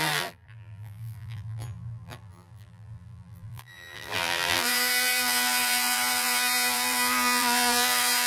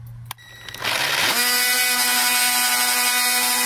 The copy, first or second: first